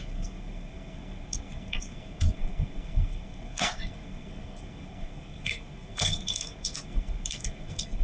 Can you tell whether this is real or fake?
fake